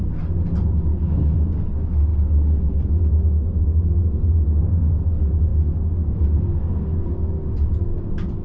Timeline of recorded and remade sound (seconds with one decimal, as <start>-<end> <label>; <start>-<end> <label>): 0.0-8.4 recorded